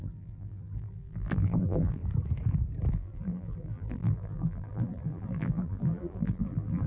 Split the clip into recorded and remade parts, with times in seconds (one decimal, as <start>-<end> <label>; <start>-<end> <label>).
0.0-2.0 remade; 2.0-2.9 recorded; 2.9-6.9 remade